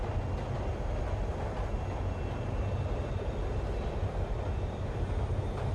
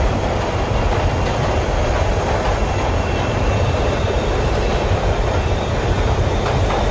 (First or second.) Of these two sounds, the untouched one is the first